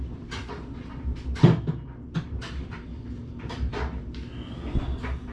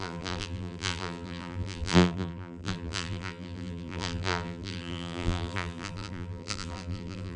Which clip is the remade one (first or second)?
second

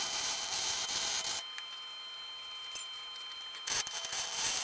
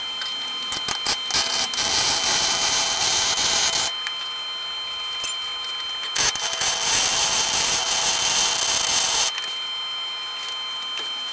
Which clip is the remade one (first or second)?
first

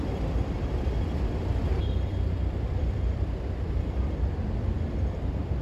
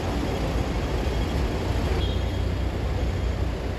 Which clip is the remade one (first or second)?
first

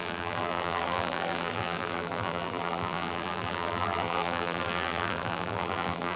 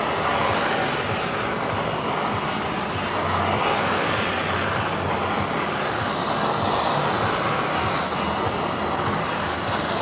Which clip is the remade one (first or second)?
first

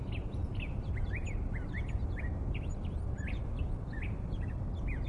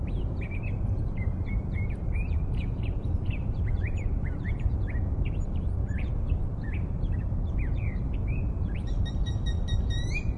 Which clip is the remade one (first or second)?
second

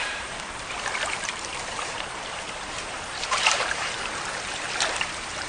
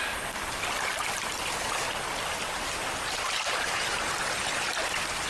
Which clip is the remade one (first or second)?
first